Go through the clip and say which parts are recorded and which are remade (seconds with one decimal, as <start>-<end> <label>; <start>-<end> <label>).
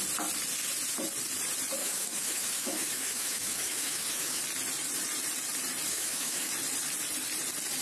0.0-1.8 recorded; 1.8-4.4 remade; 4.4-5.9 recorded; 5.9-6.5 remade; 6.5-7.8 recorded